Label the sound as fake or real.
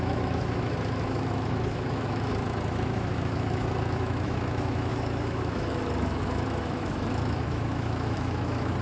fake